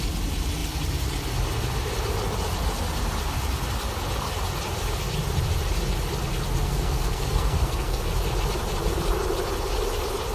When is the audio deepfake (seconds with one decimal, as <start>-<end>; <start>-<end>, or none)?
6.6-8.1